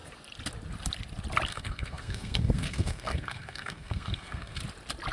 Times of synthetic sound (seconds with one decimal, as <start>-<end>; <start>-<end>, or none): 1.5-4.6